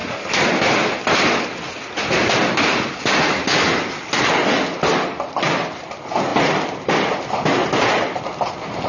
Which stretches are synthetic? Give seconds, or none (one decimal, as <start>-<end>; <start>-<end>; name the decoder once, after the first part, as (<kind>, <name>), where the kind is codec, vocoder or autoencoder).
none